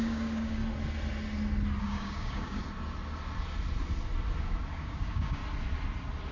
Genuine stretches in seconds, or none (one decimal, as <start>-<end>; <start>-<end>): 0.6-1.8; 2.6-4.7; 5.4-6.3